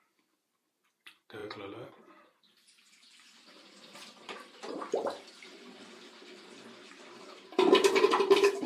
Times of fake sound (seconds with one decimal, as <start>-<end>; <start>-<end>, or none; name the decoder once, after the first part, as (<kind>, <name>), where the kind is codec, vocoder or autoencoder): 0.0-8.7 (vocoder, BigVGAN v2)